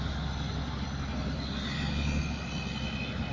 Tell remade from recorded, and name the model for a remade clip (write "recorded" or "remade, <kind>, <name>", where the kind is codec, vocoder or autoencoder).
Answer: recorded